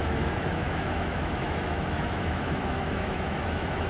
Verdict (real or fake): fake